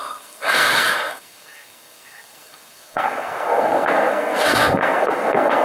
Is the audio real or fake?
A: fake